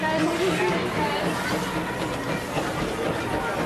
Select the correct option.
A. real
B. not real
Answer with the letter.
A